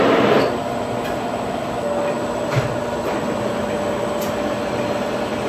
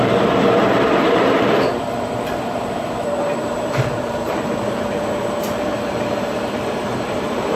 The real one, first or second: first